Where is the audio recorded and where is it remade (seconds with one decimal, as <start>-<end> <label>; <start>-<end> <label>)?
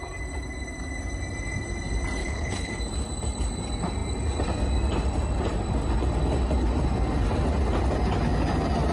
0.0-2.2 recorded; 2.2-2.7 remade; 2.7-8.9 recorded